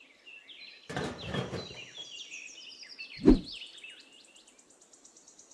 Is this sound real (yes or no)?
yes